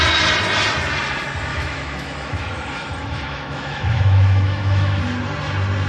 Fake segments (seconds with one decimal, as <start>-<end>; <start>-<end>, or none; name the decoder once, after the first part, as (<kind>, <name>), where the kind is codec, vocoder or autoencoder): 1.5-5.0 (autoencoder, DAC-VAE)